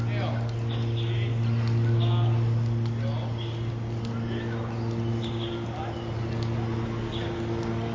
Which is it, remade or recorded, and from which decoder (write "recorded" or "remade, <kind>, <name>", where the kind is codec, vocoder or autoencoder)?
recorded